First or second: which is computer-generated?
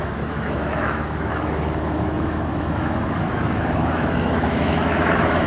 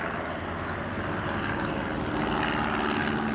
first